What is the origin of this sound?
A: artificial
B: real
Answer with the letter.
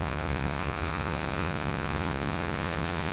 A